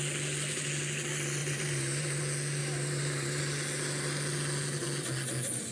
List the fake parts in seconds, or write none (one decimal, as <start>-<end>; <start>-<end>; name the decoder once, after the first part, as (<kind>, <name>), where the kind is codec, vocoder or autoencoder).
1.4-2.2 (vocoder, BigVGAN v2); 2.6-3.4